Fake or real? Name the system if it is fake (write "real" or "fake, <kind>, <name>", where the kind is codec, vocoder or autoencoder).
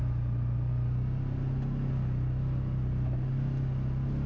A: real